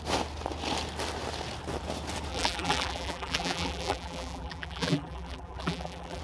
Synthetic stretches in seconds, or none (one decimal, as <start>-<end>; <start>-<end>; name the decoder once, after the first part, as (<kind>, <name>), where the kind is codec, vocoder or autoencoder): 2.3-6.2 (vocoder, BigVGAN v2)